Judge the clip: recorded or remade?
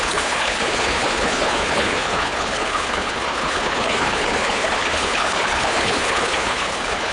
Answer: remade